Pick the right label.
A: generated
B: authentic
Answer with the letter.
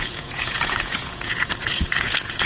A